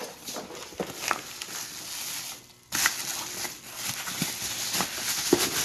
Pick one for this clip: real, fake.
real